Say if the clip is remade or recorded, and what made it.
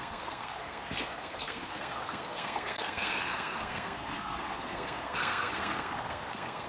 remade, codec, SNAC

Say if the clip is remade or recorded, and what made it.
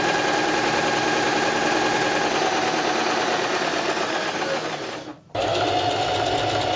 recorded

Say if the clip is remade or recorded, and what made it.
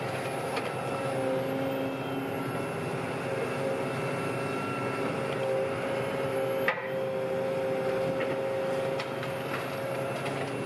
recorded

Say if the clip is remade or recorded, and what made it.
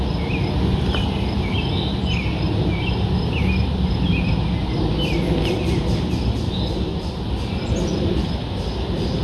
recorded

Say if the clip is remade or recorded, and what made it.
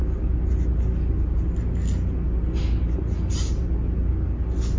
recorded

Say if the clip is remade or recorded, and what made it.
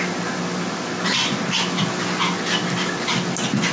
recorded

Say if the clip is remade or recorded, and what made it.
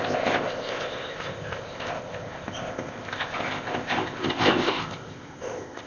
remade, codec, ZipCodec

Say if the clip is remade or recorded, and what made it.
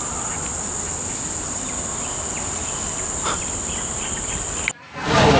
recorded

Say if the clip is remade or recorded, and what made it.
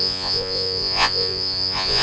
remade, vocoder, Vocos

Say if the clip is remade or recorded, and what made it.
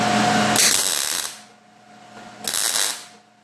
recorded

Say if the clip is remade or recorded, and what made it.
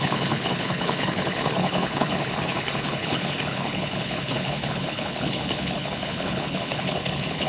remade, codec, HILCodec